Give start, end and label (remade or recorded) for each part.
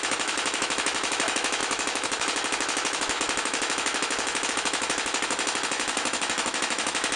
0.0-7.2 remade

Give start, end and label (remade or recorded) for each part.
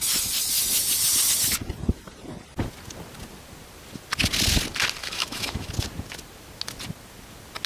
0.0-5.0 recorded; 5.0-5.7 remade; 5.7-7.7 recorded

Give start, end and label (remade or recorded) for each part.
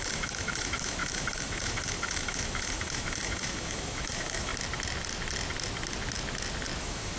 0.0-4.5 remade; 4.5-6.8 recorded; 6.8-7.2 remade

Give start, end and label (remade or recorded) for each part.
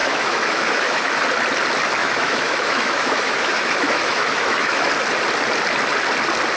0.0-1.2 remade; 1.2-2.0 recorded; 2.0-4.9 remade; 4.9-6.6 recorded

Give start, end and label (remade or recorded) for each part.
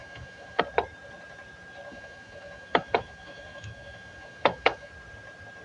0.0-0.6 remade; 0.6-1.9 recorded; 1.9-4.9 remade; 4.9-5.6 recorded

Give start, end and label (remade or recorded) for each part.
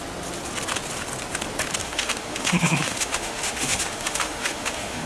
0.0-1.8 recorded; 1.8-5.1 remade